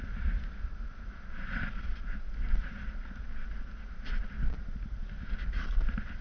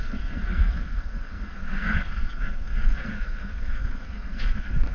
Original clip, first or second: first